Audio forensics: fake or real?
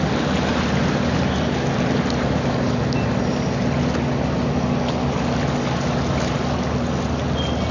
real